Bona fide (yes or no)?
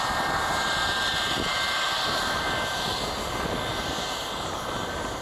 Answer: yes